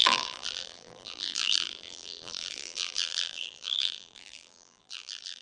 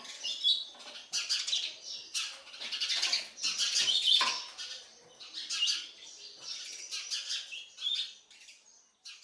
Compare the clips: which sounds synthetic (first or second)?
first